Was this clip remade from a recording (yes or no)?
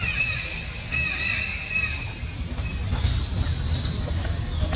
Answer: no